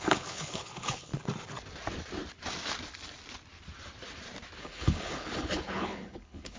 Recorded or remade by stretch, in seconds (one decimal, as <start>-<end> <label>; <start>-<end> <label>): 0.0-1.1 remade; 1.1-4.6 recorded; 4.6-6.6 remade